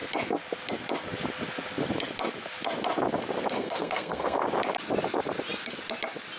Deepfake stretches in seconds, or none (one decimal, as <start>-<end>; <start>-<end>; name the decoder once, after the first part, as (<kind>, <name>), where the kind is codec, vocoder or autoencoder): 3.5-4.4 (codec, SNAC)